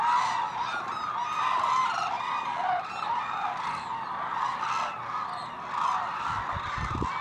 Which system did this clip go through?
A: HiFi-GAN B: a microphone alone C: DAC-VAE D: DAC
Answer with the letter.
B